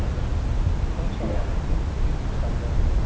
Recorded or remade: recorded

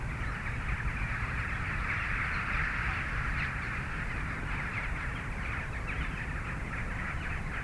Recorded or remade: recorded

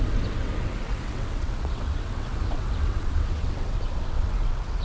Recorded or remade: remade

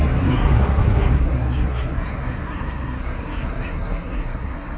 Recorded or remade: remade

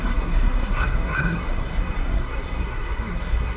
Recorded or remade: remade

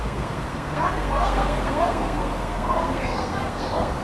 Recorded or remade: remade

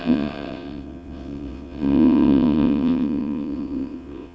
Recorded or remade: remade